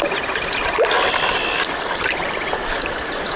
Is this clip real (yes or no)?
yes